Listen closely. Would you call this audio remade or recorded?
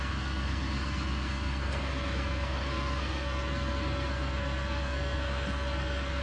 remade